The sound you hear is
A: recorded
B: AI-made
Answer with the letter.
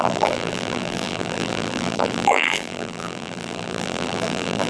B